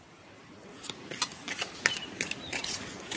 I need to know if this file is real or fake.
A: real